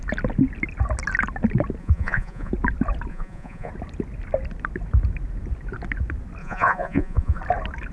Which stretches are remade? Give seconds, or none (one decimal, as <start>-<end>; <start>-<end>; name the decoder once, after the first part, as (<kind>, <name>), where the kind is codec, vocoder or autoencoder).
1.8-2.5 (vocoder, Vocos); 3.1-3.7; 6.4-7.4